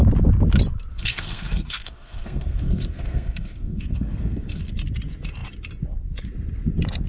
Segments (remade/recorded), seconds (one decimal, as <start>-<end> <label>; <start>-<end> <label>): 0.0-0.9 recorded; 0.9-4.6 remade; 4.6-7.1 recorded